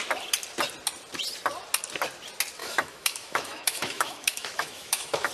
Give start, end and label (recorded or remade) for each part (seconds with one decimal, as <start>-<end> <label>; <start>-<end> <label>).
0.0-2.6 recorded; 2.6-5.3 remade